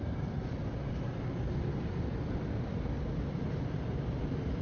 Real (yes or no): yes